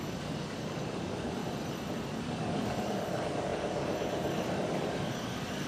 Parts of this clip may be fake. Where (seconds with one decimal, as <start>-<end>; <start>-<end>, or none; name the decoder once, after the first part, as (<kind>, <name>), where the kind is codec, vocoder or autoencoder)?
0.0-1.4 (codec, DAC); 2.2-5.7